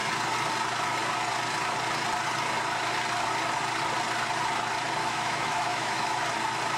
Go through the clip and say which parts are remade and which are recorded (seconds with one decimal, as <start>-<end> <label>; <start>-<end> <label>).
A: 0.0-5.0 recorded; 5.0-6.2 remade; 6.2-6.8 recorded